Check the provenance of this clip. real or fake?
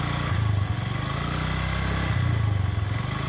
real